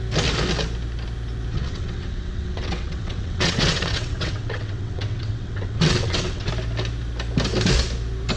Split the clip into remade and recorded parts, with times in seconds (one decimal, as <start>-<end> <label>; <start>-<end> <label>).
0.0-1.5 recorded; 1.5-6.5 remade; 6.5-8.4 recorded